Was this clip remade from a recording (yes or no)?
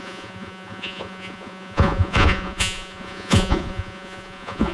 yes